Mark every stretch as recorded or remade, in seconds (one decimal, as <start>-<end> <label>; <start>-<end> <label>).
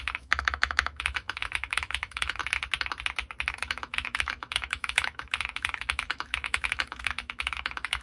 0.0-2.4 remade; 2.4-3.5 recorded; 3.5-8.0 remade